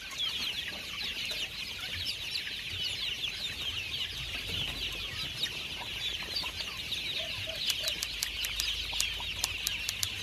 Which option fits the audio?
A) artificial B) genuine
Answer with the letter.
B